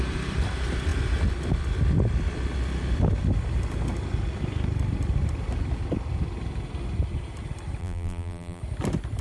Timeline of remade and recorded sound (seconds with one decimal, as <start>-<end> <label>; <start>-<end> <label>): 0.0-7.8 recorded; 7.8-8.6 remade; 8.6-9.2 recorded